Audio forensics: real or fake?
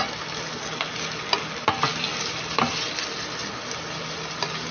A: real